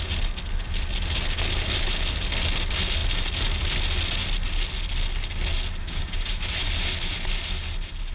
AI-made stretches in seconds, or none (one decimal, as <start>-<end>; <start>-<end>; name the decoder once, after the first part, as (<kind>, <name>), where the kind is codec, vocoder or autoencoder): 5.8-6.7 (codec, DAC)